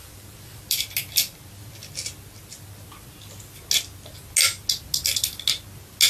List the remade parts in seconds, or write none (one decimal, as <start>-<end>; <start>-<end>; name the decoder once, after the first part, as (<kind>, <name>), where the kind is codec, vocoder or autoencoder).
0.0-0.8 (vocoder, BigVGAN v2)